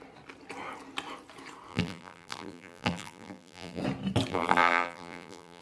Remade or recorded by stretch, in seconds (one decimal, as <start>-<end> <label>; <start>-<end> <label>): 0.0-1.7 recorded; 1.7-3.8 remade; 3.8-4.3 recorded; 4.3-5.6 remade